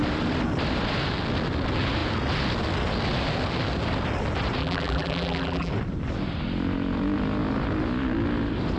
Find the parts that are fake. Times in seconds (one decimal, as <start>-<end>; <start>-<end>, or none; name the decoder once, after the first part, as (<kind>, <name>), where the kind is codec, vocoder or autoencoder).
4.6-5.7 (vocoder, BigVGAN v2)